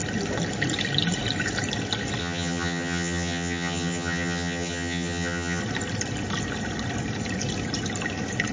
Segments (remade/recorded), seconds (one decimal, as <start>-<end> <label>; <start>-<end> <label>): 0.0-2.2 recorded; 2.2-5.6 remade; 5.6-8.5 recorded